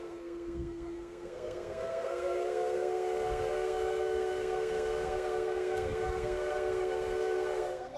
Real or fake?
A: fake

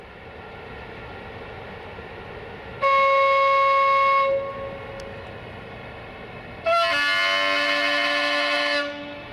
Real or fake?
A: real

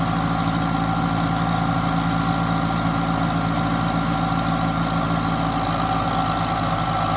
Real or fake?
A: real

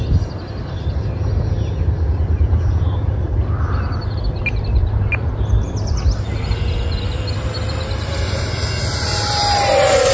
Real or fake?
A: real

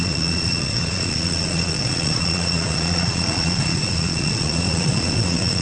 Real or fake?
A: fake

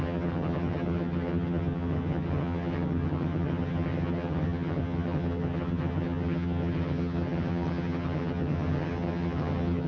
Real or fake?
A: fake